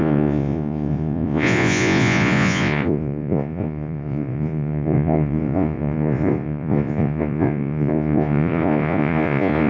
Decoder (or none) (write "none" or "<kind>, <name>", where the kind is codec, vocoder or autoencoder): vocoder, Vocos